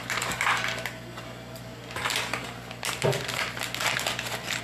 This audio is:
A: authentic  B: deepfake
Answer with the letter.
A